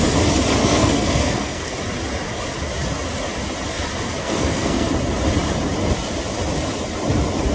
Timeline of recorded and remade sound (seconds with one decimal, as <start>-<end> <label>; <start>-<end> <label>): 0.0-0.6 recorded; 0.6-1.7 remade; 1.7-4.2 recorded; 4.2-4.9 remade; 4.9-7.5 recorded